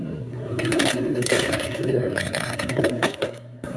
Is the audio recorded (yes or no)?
no